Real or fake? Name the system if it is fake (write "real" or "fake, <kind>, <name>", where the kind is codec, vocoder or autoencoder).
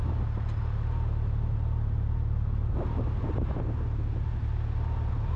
real